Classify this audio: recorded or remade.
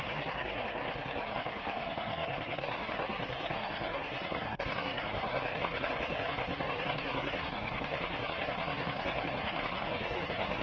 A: remade